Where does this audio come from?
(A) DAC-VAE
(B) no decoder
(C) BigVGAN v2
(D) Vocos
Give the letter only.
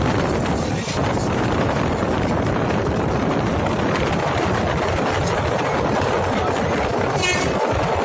C